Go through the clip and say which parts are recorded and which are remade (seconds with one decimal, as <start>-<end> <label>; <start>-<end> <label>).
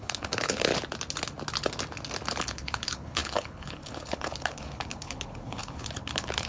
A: 0.0-0.7 remade; 0.7-2.4 recorded; 2.4-6.5 remade